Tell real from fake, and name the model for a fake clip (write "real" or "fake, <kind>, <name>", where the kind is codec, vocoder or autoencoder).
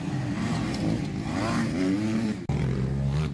real